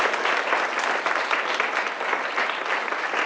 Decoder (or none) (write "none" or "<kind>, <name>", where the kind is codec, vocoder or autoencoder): none